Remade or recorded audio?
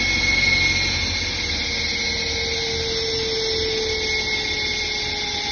recorded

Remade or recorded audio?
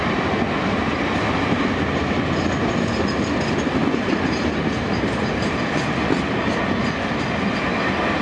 recorded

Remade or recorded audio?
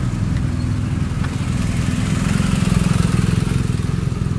recorded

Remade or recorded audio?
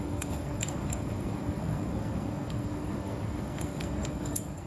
remade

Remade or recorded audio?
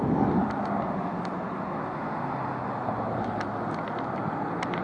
recorded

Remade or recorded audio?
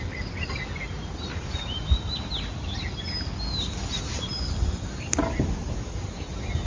recorded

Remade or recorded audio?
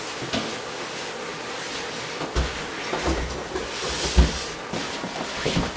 recorded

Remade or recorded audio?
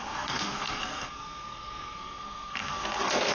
remade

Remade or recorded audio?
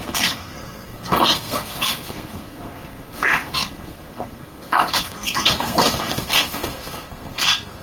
remade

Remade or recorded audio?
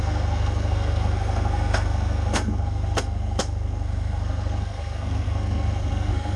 remade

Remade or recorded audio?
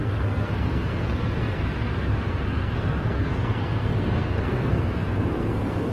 remade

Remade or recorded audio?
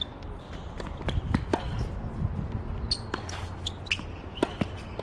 recorded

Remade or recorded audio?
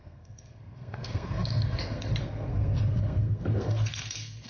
remade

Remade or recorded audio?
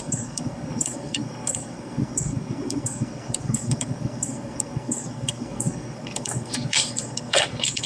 remade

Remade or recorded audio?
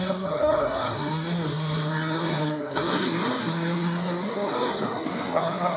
remade